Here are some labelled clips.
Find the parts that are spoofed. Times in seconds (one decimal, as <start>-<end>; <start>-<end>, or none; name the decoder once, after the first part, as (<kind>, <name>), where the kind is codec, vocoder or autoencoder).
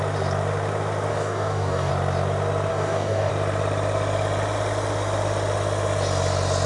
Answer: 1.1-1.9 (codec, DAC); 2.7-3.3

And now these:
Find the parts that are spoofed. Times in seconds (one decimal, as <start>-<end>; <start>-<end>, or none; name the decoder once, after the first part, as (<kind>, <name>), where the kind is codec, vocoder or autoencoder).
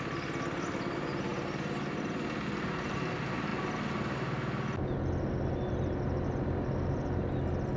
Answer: none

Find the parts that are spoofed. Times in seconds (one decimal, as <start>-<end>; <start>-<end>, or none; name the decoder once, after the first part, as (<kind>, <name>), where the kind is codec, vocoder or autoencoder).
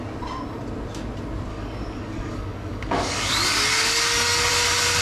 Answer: 1.5-4.5 (codec, DAC)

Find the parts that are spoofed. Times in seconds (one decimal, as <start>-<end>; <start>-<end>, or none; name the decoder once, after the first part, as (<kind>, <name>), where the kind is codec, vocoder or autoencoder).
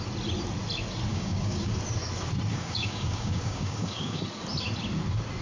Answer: 1.1-1.7 (codec, DAC); 2.5-4.2